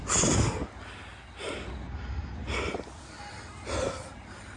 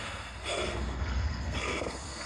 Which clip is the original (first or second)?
first